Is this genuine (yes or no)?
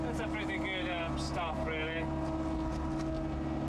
yes